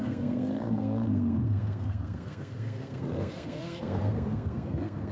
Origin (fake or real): fake